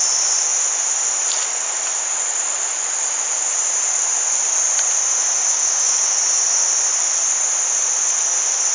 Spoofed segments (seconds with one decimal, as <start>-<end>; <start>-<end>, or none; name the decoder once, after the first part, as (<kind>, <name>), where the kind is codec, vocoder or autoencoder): 5.5-6.0 (codec, DAC)